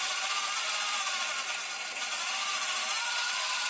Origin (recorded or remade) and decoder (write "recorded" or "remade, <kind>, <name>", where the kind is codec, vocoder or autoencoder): recorded